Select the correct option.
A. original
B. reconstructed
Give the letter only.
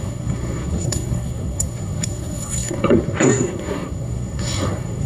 B